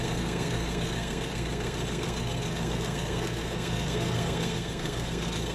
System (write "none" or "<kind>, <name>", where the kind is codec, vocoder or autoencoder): codec, SNAC